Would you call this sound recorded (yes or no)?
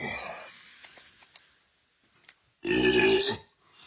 yes